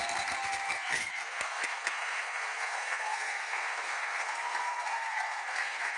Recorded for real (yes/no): no